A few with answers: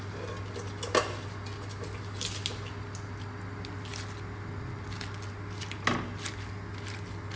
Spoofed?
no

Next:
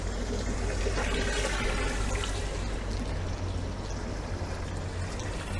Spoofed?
no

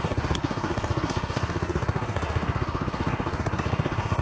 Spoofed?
yes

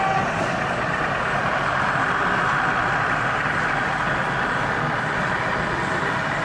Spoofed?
no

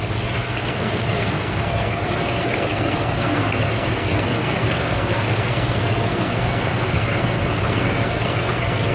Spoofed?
yes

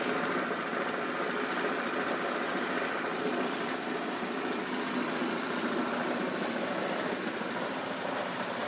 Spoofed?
no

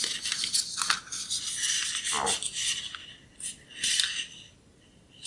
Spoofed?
no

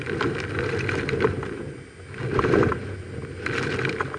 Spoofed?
no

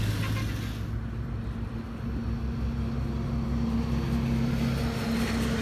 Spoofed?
no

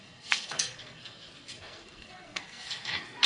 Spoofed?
yes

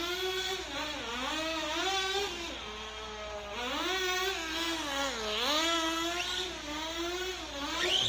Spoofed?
no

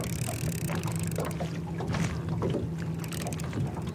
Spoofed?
no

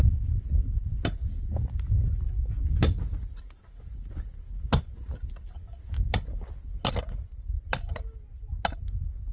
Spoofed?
no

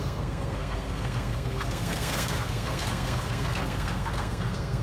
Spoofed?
yes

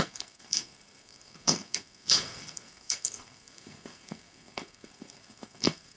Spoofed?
yes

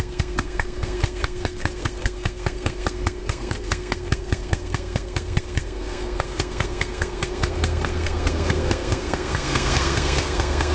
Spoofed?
yes